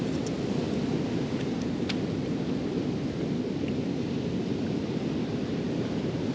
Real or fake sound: real